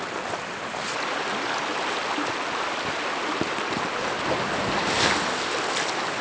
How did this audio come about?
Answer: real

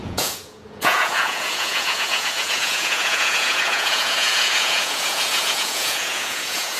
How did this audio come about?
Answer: fake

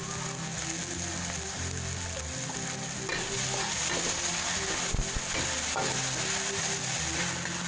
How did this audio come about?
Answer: real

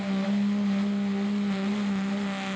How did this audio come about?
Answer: real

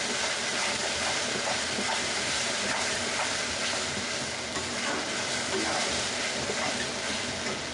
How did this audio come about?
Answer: real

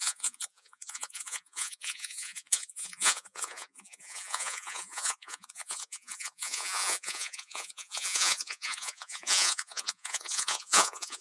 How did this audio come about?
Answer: fake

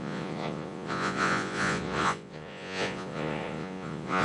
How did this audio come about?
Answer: fake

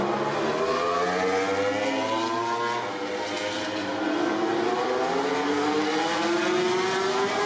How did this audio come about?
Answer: real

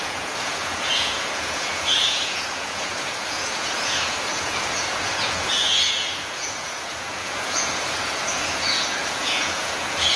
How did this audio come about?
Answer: fake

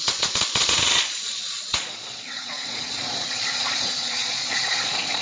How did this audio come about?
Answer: fake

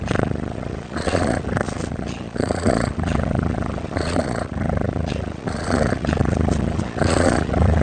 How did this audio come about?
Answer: fake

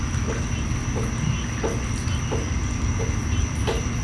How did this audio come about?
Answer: real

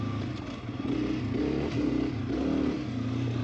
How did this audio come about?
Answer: real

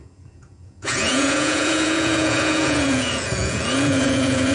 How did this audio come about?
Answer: fake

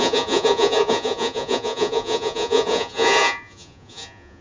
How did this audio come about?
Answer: fake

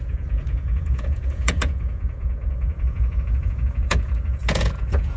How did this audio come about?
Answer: fake